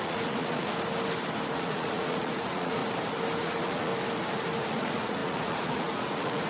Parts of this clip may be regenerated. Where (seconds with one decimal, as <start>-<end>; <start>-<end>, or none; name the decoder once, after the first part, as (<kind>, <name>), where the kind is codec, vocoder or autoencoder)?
0.0-0.7 (vocoder, Vocos); 1.5-2.8; 3.4-3.9; 4.6-6.5